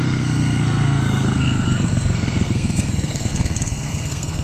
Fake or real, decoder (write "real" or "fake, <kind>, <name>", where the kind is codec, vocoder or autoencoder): fake, codec, SNAC